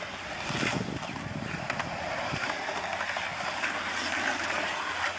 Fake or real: real